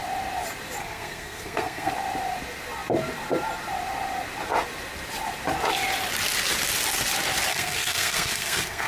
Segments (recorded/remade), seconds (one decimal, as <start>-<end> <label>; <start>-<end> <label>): 0.0-0.8 recorded; 0.8-1.9 remade; 1.9-7.5 recorded; 7.5-8.9 remade